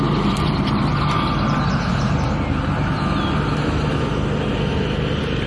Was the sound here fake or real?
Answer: real